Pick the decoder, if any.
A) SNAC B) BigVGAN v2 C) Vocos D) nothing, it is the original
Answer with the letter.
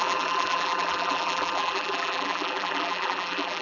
B